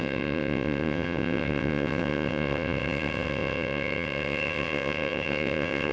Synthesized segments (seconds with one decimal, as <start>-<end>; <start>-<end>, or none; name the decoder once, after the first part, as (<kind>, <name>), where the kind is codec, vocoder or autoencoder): 0.0-5.9 (vocoder, WaveNeXt)